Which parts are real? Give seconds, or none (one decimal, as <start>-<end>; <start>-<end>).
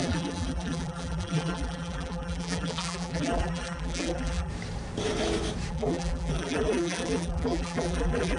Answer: 4.5-5.7